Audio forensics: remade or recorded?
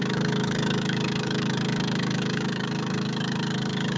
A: remade